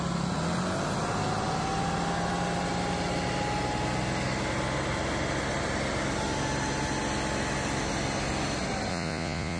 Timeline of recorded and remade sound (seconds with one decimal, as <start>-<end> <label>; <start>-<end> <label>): 0.0-8.9 recorded; 8.9-9.6 remade